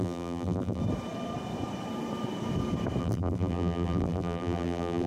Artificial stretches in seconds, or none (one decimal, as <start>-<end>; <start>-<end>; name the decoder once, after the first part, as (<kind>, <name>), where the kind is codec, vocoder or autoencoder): 0.0-0.8 (vocoder, BigVGAN v2); 3.0-5.1